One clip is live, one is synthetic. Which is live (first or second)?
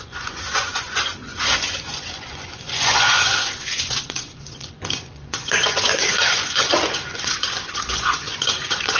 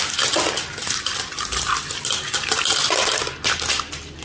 second